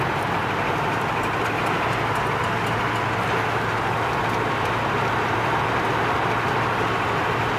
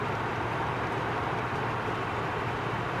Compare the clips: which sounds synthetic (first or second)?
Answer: second